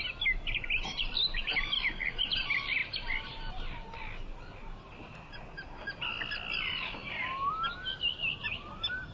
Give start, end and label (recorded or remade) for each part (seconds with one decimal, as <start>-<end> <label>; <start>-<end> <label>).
0.0-9.1 recorded